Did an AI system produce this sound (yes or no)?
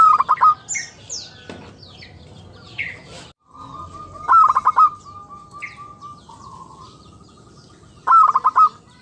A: no